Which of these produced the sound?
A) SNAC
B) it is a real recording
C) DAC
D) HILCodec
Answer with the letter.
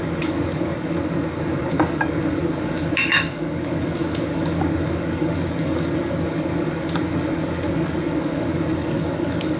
C